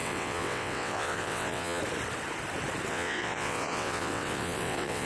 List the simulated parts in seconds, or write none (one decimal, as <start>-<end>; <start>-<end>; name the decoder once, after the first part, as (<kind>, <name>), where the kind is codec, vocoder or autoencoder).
0.0-1.8 (vocoder, WaveNeXt); 2.9-5.1